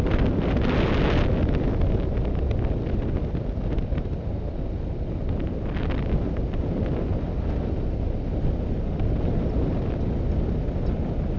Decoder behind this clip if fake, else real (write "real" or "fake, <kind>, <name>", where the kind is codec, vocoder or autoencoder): real